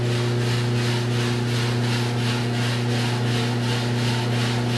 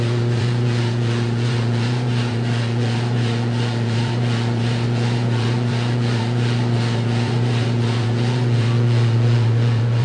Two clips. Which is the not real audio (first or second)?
second